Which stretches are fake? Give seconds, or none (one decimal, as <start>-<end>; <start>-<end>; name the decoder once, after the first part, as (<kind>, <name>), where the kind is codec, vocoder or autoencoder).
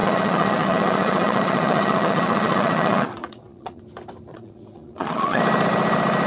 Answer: 0.0-3.8 (vocoder, Vocos); 4.3-5.4